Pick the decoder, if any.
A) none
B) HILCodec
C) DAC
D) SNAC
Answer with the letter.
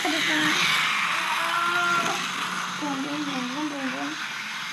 A